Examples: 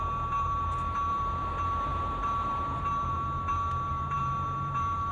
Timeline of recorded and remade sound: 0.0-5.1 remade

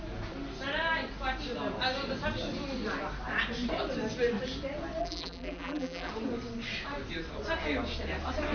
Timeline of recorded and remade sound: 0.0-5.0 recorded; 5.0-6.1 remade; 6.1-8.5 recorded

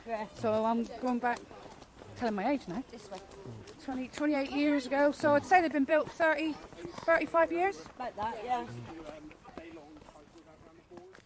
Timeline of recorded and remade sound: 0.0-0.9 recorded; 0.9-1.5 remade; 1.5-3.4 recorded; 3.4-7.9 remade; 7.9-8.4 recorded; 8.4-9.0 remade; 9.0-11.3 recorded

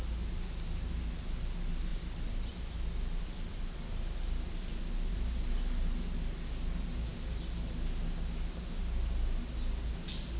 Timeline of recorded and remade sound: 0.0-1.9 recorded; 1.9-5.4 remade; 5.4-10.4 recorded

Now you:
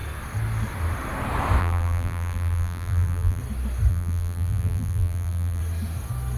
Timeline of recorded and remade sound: 0.0-1.6 recorded; 1.6-3.4 remade; 3.4-3.9 recorded; 3.9-5.6 remade; 5.6-6.4 recorded

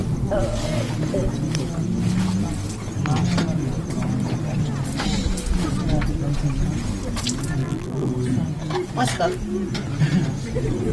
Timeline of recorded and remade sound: 0.0-7.6 recorded; 7.6-8.1 remade; 8.1-10.9 recorded